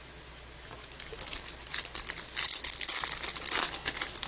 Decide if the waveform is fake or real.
real